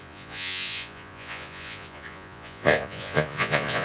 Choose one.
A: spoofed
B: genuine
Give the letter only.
A